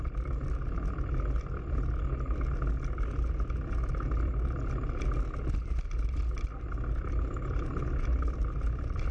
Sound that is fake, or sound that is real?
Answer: real